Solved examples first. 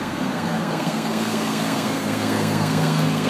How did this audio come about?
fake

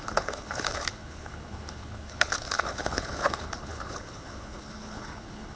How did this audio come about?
fake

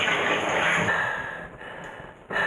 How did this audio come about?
real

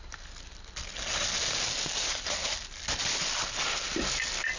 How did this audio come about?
real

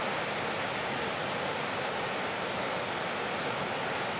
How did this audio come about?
real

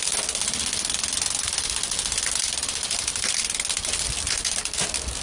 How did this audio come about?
real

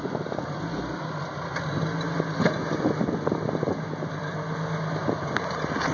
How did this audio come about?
real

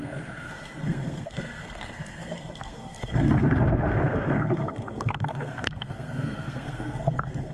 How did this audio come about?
fake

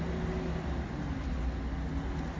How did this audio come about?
real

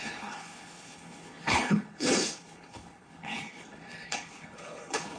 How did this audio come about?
fake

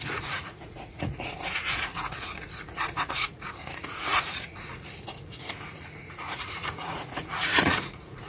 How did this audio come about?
fake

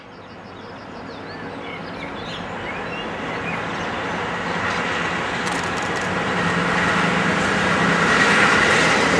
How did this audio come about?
real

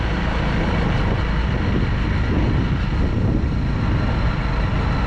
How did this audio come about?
real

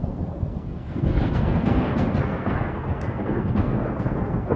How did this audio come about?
fake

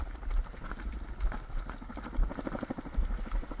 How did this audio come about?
real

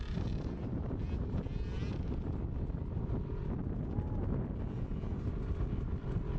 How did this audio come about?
real